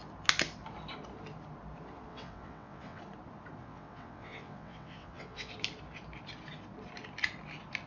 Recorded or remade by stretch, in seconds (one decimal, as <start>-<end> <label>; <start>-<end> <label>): 0.0-2.1 recorded; 2.1-3.0 remade; 3.0-3.6 recorded; 3.6-5.5 remade; 5.5-7.9 recorded